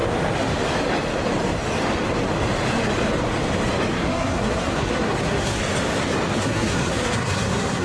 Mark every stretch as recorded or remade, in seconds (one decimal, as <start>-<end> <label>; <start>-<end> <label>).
0.0-3.9 recorded; 3.9-5.6 remade; 5.6-6.4 recorded; 6.4-7.8 remade